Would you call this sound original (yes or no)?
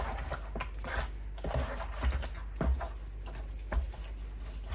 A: yes